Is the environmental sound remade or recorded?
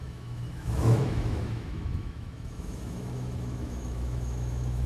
remade